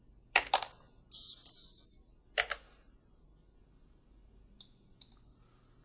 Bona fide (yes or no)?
yes